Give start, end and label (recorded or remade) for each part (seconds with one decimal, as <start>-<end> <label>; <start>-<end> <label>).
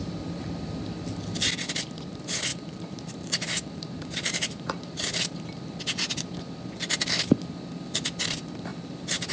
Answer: 0.0-2.5 recorded; 2.5-5.4 remade; 5.4-8.7 recorded; 8.7-9.3 remade